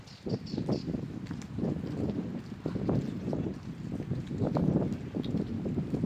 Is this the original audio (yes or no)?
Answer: yes